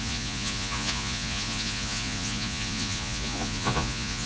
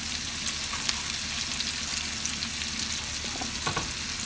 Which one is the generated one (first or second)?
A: first